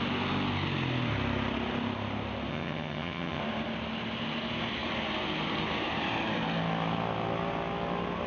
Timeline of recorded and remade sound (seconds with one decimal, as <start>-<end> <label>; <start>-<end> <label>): 0.0-2.5 recorded; 2.5-3.4 remade; 3.4-8.3 recorded